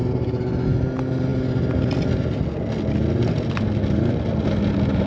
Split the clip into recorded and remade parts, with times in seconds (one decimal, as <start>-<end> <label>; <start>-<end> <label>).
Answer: 0.0-5.1 recorded